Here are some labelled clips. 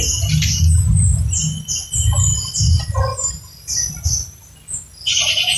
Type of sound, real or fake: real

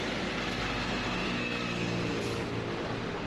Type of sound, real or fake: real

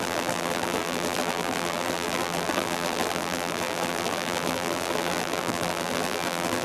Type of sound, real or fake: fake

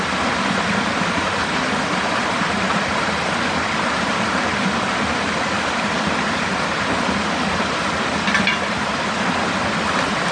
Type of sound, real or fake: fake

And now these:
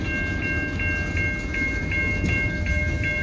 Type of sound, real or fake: real